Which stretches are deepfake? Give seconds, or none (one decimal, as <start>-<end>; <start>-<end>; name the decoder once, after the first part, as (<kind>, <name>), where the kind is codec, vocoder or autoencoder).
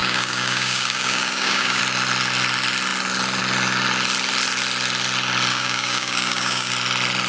0.0-1.8 (codec, DAC); 5.5-6.7